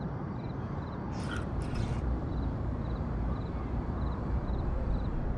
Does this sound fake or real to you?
fake